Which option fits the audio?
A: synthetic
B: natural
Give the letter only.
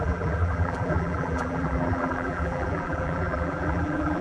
A